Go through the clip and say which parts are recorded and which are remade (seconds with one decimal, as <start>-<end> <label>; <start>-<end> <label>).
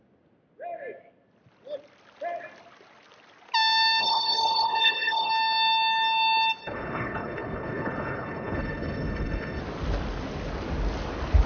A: 0.0-4.0 recorded; 4.0-5.3 remade; 5.3-6.6 recorded; 6.6-9.6 remade; 9.6-11.5 recorded